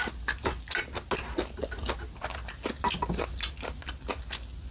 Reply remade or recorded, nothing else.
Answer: recorded